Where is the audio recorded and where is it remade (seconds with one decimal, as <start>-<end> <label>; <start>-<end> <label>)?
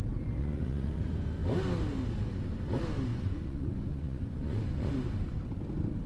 0.0-0.4 recorded; 0.4-1.0 remade; 1.0-3.1 recorded; 3.1-4.9 remade; 4.9-6.1 recorded